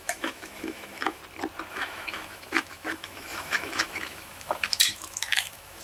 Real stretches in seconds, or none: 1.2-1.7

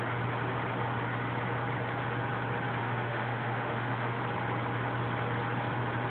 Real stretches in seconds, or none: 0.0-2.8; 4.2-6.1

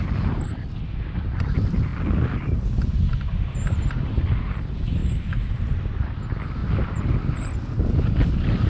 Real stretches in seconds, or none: 0.0-5.0; 5.5-8.7